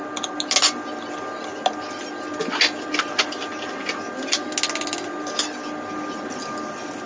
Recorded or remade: recorded